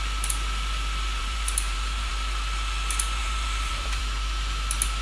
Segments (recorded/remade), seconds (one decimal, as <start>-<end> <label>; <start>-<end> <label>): 0.0-1.2 recorded; 1.2-2.1 remade; 2.1-3.2 recorded; 3.2-4.0 remade; 4.0-5.0 recorded